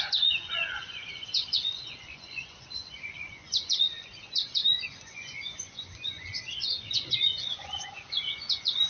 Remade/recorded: remade